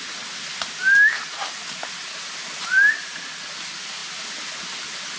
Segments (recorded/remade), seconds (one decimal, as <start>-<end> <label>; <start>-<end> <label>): 0.0-3.0 recorded; 3.0-3.5 remade; 3.5-5.2 recorded